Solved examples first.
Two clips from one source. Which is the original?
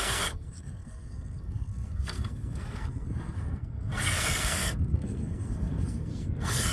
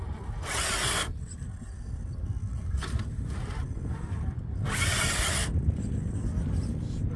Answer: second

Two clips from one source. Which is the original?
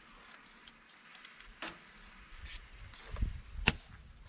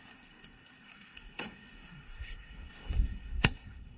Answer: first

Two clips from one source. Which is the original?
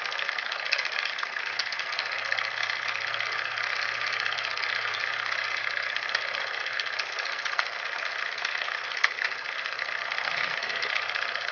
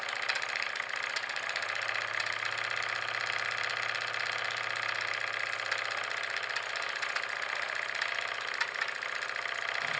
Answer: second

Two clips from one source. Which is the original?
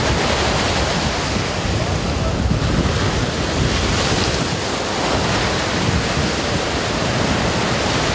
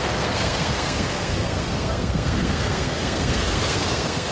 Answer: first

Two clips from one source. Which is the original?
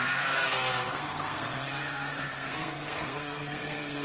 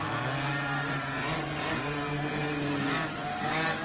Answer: second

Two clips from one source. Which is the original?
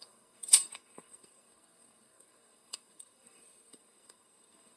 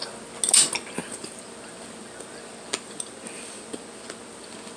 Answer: second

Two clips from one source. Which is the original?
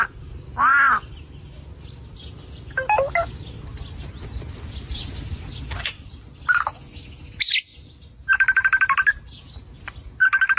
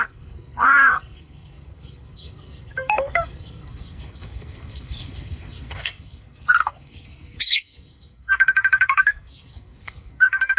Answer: first